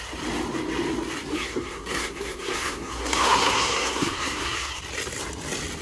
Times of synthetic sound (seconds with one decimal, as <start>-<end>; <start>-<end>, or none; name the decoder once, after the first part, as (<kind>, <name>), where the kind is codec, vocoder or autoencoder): 1.3-4.8 (codec, SNAC)